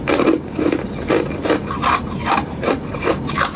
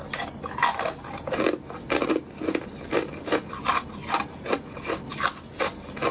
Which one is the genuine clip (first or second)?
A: second